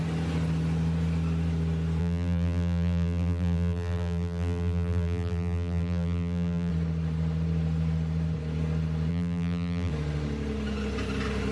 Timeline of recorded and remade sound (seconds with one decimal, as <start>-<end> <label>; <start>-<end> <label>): 0.0-2.0 recorded; 2.0-6.7 remade; 6.7-9.1 recorded; 9.1-9.9 remade; 9.9-11.5 recorded